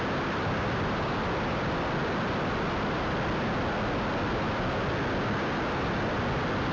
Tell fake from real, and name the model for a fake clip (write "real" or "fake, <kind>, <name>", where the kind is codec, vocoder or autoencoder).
real